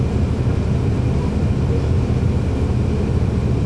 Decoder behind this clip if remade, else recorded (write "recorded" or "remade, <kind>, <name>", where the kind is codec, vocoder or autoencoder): recorded